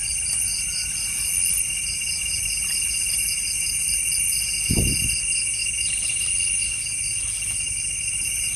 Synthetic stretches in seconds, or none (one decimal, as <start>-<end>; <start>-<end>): 6.8-7.9